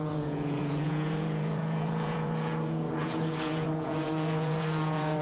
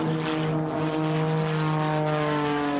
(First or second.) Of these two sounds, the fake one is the first